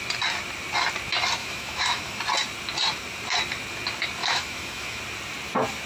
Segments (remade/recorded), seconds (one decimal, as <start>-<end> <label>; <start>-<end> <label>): 0.0-1.4 recorded; 1.4-2.2 remade; 2.2-4.2 recorded; 4.2-5.0 remade; 5.0-5.9 recorded